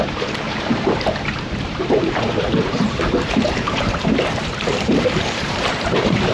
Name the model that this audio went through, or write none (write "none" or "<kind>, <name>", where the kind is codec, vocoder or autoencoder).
vocoder, BigVGAN v2